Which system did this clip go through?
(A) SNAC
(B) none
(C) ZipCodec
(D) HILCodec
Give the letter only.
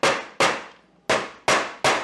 B